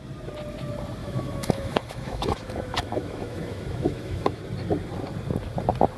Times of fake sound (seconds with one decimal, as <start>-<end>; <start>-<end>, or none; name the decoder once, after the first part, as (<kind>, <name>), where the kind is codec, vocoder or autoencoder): 1.0-4.4 (autoencoder, DAC-VAE)